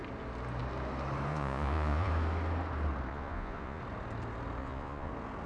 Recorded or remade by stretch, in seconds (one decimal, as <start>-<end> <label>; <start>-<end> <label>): 0.0-1.3 recorded; 1.3-2.1 remade; 2.1-3.1 recorded; 3.1-3.8 remade; 3.8-4.6 recorded; 4.6-5.1 remade; 5.1-5.5 recorded